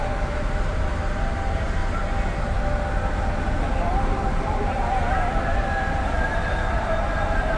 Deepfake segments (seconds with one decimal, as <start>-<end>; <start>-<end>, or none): 0.0-1.8; 3.7-7.6